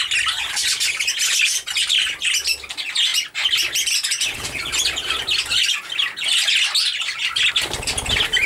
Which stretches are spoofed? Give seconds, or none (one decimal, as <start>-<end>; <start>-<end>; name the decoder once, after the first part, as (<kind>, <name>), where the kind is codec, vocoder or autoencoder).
none